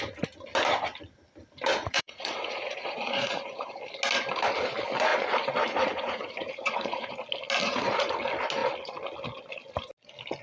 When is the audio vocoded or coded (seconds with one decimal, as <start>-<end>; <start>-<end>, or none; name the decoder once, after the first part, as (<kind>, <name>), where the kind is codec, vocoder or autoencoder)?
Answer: 1.7-3.8 (vocoder, Vocos); 5.1-7.1; 7.6-8.1